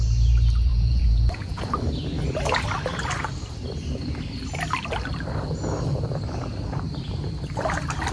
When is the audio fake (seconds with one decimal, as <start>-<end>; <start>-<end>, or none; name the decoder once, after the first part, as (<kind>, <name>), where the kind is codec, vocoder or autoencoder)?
0.7-1.6 (vocoder, Vocos)